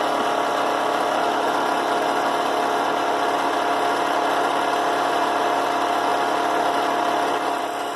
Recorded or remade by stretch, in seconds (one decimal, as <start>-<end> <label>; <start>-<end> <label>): 0.0-8.0 recorded